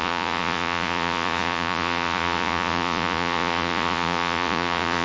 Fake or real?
fake